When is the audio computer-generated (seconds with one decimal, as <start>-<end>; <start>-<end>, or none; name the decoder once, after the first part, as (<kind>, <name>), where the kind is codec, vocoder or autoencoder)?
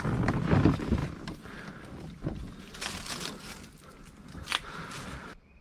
none